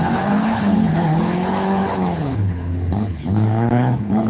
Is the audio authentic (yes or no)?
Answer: no